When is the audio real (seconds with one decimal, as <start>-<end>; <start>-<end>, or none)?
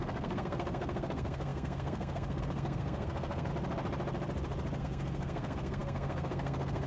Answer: 3.5-4.8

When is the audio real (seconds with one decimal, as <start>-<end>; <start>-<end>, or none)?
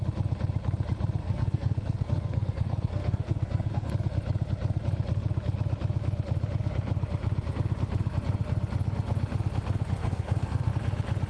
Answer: 0.0-1.2; 3.9-10.0; 10.7-11.3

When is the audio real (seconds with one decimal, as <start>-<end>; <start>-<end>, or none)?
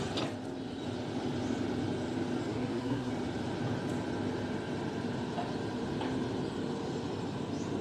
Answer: 0.0-2.5; 3.1-7.8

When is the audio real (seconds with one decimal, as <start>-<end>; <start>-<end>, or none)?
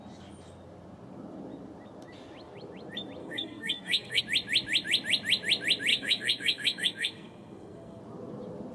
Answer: 0.0-3.2; 4.2-5.9; 8.0-8.7